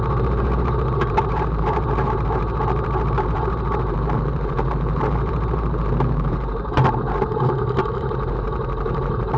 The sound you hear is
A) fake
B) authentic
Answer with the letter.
A